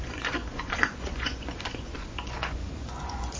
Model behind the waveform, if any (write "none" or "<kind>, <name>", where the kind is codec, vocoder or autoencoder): vocoder, Vocos